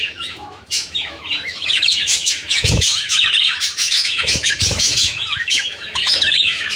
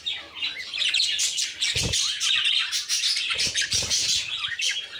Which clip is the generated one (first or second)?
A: first